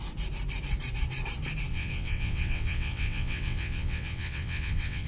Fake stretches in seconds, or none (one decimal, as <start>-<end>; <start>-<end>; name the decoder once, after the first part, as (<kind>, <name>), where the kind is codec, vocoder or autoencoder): 1.7-5.1 (vocoder, WaveNeXt)